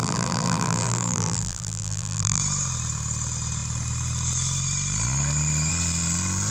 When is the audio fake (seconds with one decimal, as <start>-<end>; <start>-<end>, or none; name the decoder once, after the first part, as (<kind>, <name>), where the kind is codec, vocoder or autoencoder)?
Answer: 0.0-2.4 (vocoder, BigVGAN v2)